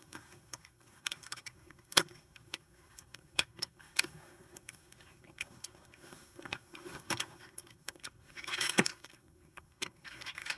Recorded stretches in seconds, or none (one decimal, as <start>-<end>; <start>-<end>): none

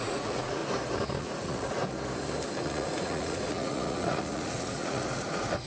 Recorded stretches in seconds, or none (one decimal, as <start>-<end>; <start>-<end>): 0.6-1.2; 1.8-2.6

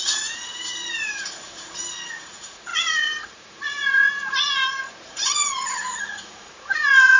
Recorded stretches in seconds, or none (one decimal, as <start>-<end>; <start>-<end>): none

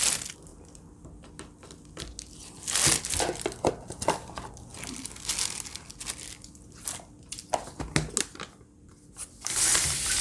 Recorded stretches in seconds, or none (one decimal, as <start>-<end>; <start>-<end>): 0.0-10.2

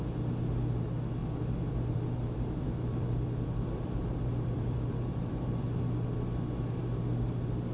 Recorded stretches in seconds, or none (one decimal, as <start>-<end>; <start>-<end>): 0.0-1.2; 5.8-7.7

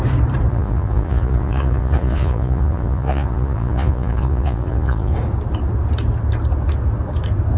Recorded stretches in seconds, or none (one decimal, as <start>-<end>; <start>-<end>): 0.0-0.5; 5.1-7.6

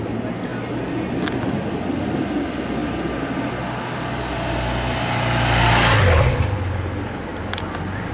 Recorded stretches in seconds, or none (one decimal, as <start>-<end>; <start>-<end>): 0.0-8.1

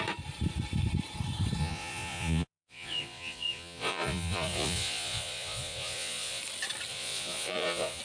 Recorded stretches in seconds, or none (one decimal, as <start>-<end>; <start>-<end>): 0.0-1.6; 6.4-6.9